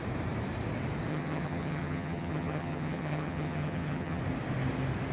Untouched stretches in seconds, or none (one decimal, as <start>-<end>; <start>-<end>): 0.0-1.1; 4.2-5.1